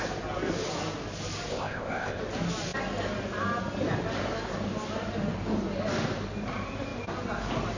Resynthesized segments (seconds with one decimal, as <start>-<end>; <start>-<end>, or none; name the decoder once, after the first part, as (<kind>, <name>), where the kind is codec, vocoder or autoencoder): 1.5-2.2 (codec, ZipCodec)